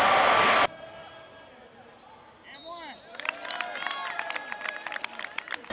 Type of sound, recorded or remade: recorded